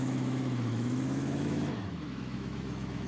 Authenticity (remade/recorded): remade